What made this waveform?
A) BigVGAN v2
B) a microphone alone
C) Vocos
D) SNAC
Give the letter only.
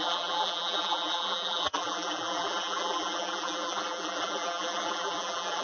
A